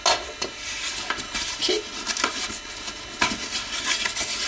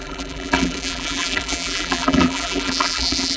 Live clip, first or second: first